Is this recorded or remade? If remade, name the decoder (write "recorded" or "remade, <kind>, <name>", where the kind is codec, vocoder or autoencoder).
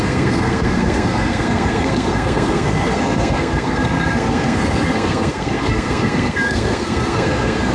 remade, codec, SNAC